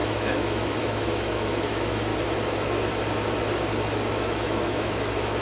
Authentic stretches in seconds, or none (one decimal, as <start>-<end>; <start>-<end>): 2.1-4.1